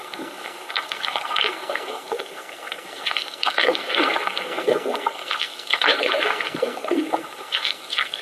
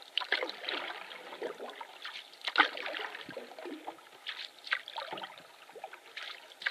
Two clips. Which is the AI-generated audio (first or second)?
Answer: first